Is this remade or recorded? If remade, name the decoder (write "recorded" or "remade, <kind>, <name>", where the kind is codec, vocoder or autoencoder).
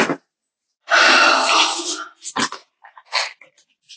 recorded